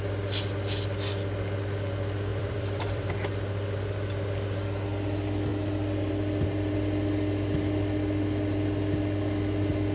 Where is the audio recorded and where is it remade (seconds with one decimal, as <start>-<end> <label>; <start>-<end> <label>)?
0.0-2.3 recorded; 2.3-3.1 remade; 3.1-9.9 recorded